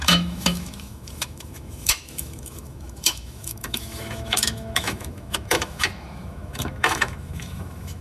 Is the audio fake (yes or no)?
yes